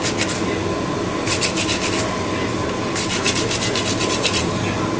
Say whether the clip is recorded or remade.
recorded